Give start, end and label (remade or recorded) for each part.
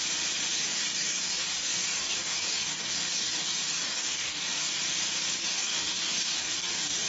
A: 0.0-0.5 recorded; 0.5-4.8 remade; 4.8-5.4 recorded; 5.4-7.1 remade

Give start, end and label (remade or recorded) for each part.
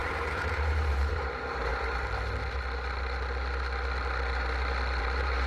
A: 0.0-1.7 remade; 1.7-5.0 recorded; 5.0-5.5 remade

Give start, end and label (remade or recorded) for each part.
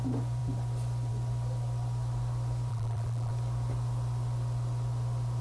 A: 0.0-2.7 recorded; 2.7-3.3 remade; 3.3-5.4 recorded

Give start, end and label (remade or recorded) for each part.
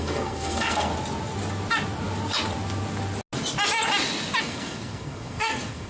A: 0.0-0.9 remade; 0.9-4.4 recorded; 4.4-5.9 remade